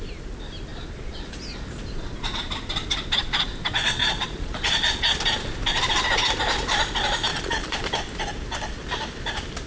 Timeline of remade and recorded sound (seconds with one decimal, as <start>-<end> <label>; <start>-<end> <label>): 0.0-4.0 recorded; 4.0-5.2 remade; 5.2-7.3 recorded; 7.3-7.8 remade; 7.8-9.7 recorded